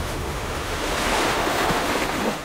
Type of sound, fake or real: fake